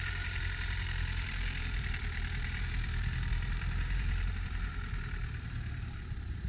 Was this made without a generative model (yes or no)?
no